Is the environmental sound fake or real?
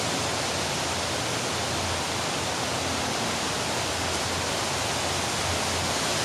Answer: real